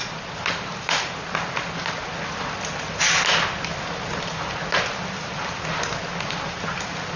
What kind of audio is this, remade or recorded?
recorded